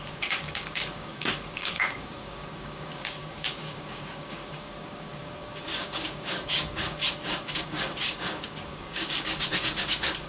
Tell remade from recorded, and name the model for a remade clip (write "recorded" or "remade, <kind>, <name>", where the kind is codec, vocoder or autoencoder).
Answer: remade, codec, DAC